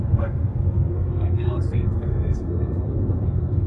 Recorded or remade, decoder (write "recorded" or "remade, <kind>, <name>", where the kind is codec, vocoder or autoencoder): remade, codec, SNAC